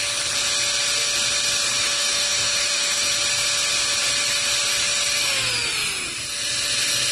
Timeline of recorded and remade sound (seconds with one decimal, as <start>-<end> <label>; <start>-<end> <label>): 0.0-1.8 recorded; 1.8-3.1 remade; 3.1-7.1 recorded